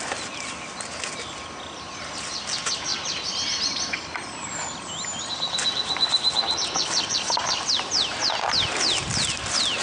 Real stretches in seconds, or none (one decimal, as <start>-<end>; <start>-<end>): 0.0-2.9; 7.7-9.8